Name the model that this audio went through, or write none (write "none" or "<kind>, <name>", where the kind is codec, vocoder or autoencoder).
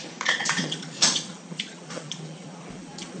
vocoder, Vocos